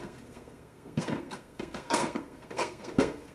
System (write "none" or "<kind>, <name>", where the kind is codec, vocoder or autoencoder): codec, SNAC